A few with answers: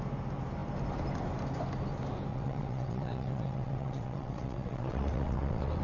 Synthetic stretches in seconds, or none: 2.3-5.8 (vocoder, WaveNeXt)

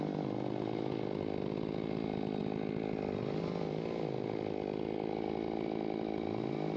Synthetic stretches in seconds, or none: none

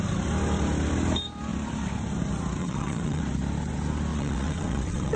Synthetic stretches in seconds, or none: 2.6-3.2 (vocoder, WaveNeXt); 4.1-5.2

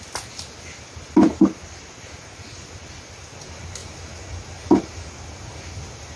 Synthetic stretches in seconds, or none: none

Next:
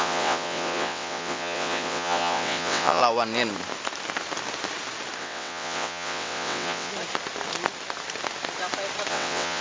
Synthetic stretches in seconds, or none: 0.0-3.0 (vocoder, WaveNeXt); 5.2-6.9; 9.1-9.6